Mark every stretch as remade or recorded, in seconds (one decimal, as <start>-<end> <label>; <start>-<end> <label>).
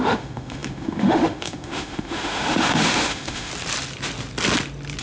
0.0-3.5 remade; 3.5-5.0 recorded